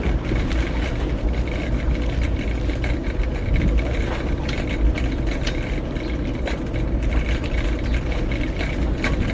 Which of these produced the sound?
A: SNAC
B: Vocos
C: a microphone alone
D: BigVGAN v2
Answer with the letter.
C